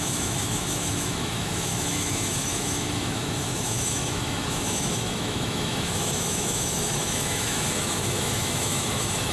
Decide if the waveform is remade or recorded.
remade